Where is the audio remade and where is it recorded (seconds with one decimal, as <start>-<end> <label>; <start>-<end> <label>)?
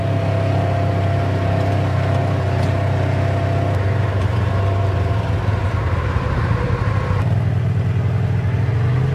0.0-5.6 recorded; 5.6-6.8 remade; 6.8-9.1 recorded